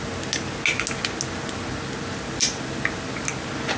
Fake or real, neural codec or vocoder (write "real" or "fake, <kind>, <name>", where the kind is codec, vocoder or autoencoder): real